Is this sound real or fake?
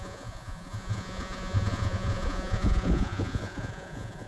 fake